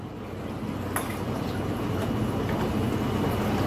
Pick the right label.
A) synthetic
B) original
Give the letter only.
B